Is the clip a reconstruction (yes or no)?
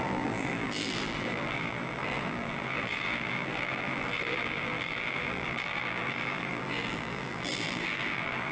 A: yes